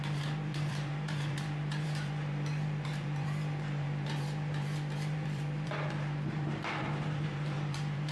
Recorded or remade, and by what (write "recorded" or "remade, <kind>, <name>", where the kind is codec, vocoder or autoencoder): remade, vocoder, BigVGAN v2